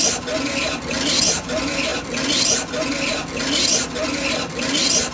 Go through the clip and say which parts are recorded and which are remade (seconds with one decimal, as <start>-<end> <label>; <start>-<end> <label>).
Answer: 0.0-5.1 recorded